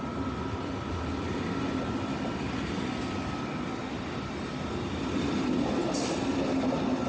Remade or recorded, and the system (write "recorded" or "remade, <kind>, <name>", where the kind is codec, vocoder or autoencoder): recorded